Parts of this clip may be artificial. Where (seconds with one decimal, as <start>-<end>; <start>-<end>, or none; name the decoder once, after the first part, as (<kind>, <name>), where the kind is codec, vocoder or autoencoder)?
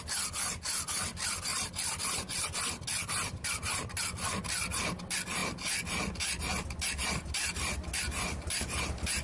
none